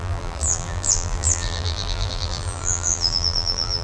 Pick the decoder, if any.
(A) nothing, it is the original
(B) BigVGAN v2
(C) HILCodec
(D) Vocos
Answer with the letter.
B